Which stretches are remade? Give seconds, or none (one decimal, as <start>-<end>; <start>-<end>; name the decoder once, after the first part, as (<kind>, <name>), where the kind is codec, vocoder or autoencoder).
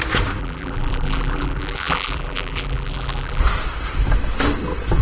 0.4-3.4 (vocoder, BigVGAN v2)